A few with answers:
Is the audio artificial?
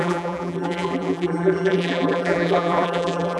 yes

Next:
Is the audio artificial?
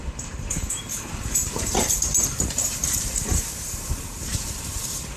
yes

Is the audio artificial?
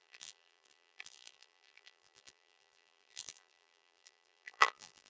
yes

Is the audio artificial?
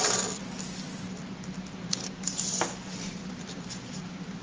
no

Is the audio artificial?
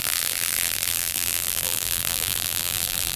yes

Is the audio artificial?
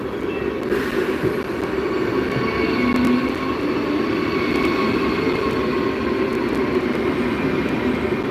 no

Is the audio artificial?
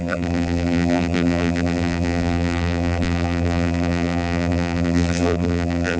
yes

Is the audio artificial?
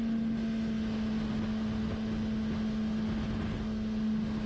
no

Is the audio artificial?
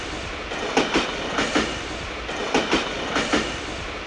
yes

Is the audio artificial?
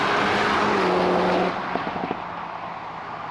no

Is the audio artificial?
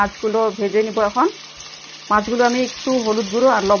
no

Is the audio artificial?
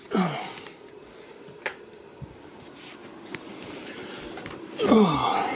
yes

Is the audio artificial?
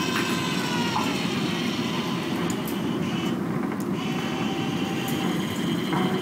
no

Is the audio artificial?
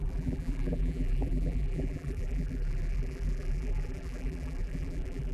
yes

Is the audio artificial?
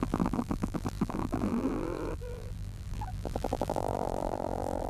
yes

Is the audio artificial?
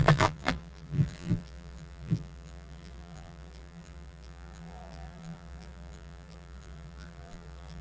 yes